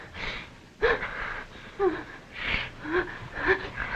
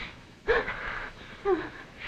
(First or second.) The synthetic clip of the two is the second